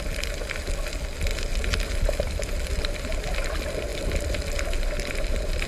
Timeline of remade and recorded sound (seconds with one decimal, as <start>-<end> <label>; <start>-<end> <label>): 0.0-5.7 recorded